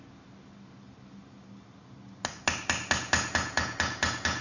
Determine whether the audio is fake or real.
real